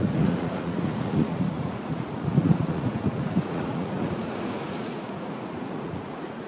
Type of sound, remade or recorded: remade